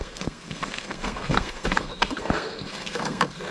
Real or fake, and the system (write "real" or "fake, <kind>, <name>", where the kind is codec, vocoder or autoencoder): fake, codec, SNAC